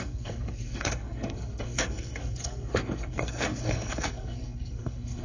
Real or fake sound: fake